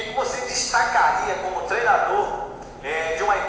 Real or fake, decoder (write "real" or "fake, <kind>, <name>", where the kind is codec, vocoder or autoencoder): real